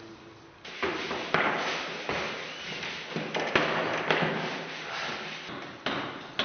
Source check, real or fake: real